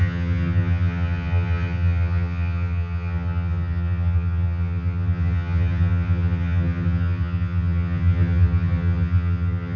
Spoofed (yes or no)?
yes